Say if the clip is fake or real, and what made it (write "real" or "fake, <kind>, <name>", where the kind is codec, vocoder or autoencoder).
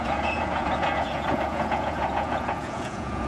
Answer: fake, vocoder, Vocos